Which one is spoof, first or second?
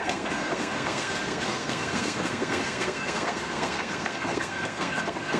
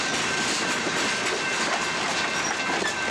first